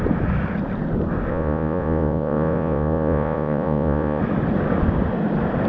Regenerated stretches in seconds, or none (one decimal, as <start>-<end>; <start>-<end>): 1.3-4.2